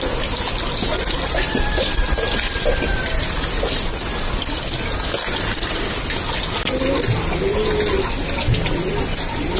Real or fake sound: real